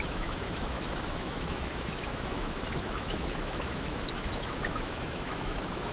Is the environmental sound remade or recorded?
remade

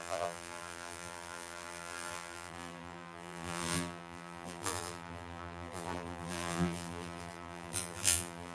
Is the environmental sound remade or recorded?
remade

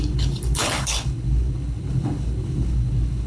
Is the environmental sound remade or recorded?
remade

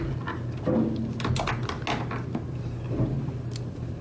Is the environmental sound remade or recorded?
recorded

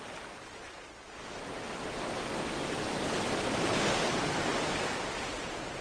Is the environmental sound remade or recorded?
recorded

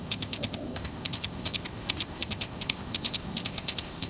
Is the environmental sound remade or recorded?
remade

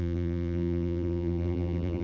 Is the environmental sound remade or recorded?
remade